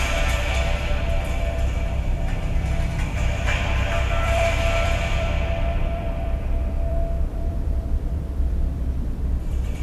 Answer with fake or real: fake